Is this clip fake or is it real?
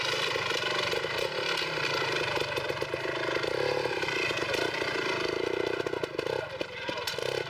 real